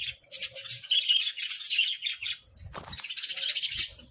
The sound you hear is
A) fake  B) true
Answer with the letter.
B